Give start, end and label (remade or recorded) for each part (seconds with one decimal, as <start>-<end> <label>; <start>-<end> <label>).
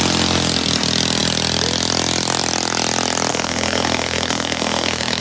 0.0-3.3 recorded; 3.3-5.2 remade